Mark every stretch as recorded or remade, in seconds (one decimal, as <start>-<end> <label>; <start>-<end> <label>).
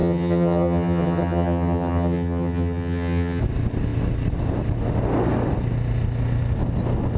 0.0-3.4 remade; 3.4-7.2 recorded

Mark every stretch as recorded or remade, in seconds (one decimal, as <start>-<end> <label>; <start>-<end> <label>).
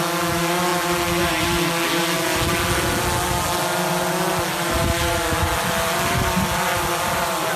0.0-7.6 recorded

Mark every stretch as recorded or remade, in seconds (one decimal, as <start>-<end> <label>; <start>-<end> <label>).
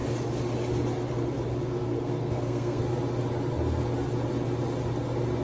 0.0-1.7 recorded; 1.7-2.8 remade; 2.8-5.4 recorded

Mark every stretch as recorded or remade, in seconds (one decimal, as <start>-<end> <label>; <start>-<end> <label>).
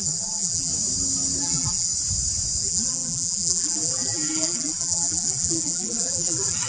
0.0-0.7 remade; 0.7-1.4 recorded; 1.4-1.9 remade; 1.9-2.6 recorded; 2.6-6.7 remade